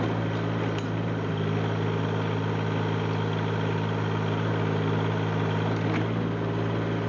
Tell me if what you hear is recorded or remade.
recorded